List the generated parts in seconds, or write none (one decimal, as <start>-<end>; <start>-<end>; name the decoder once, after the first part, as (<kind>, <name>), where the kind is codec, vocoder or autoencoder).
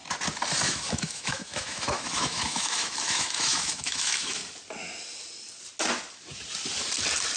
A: 0.6-4.4 (autoencoder, DAC-VAE)